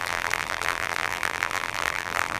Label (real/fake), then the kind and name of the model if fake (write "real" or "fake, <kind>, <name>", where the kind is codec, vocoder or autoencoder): fake, vocoder, BigVGAN v2